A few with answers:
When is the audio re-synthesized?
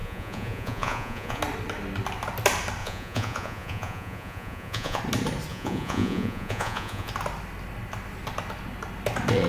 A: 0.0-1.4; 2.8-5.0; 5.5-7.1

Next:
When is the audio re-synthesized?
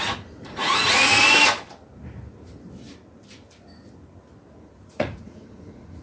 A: 0.0-1.1; 4.6-6.0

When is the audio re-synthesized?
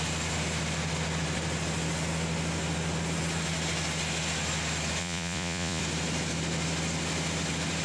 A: 5.0-5.8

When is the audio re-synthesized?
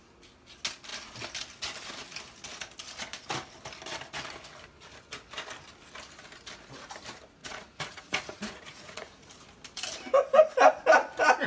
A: 7.4-9.3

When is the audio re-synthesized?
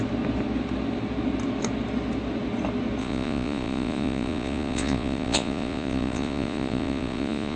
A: 3.0-7.6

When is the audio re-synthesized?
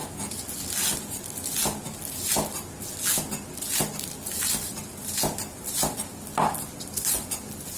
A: none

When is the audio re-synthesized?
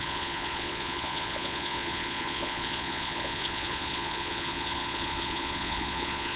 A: 0.0-6.4